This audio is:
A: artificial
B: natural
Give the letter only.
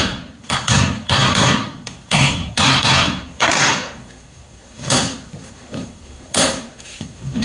A